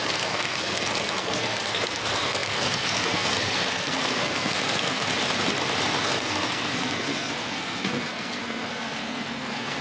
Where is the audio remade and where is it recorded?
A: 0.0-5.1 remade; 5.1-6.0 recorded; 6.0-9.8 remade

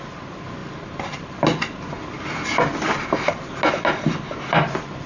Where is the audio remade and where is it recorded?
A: 0.0-5.1 recorded

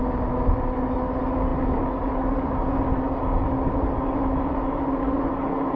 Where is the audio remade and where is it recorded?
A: 0.0-5.8 recorded

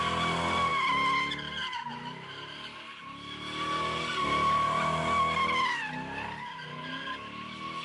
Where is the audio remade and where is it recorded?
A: 0.0-7.8 recorded

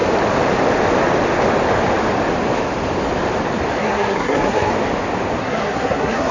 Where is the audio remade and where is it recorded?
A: 0.0-3.8 recorded; 3.8-4.7 remade; 4.7-5.4 recorded; 5.4-6.3 remade

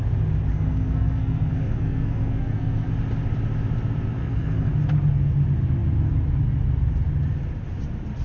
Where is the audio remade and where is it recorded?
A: 0.0-0.5 recorded; 0.5-2.9 remade; 2.9-4.2 recorded; 4.2-4.7 remade; 4.7-8.2 recorded

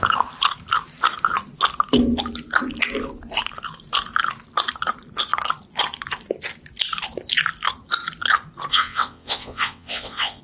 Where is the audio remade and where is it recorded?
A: 0.0-8.7 recorded; 8.7-10.4 remade

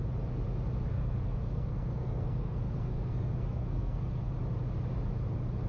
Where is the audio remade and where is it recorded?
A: 0.0-0.9 recorded; 0.9-4.3 remade; 4.3-5.7 recorded